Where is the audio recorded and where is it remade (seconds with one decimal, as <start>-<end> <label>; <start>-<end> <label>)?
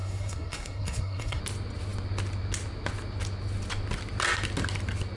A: 0.0-1.4 remade; 1.4-5.2 recorded